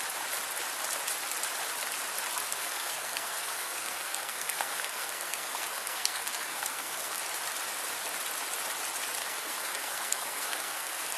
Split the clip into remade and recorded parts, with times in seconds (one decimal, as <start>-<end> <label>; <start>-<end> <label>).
0.0-2.5 recorded; 2.5-7.2 remade; 7.2-9.2 recorded; 9.2-11.2 remade